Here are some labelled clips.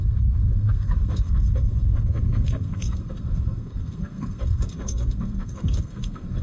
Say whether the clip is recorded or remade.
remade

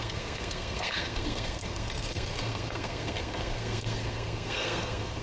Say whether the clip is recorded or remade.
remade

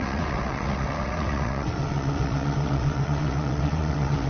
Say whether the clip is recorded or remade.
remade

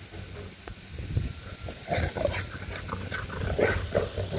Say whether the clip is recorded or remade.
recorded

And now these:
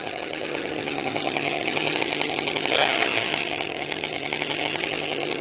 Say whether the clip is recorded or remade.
remade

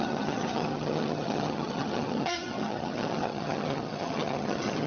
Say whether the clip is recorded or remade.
remade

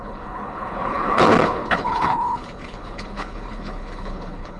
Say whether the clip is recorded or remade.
remade